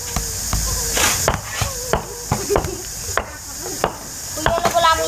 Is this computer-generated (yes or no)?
no